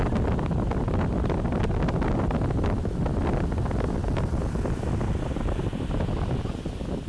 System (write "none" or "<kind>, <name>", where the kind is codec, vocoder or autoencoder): none